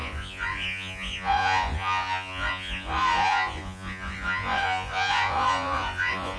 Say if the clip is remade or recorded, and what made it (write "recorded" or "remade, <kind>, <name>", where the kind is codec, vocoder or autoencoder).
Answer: remade, vocoder, Vocos